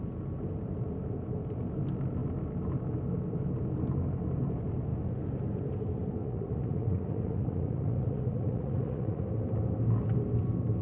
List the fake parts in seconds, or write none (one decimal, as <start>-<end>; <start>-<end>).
6.2-9.2